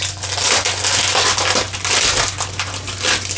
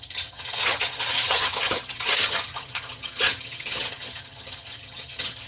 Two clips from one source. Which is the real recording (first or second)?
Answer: first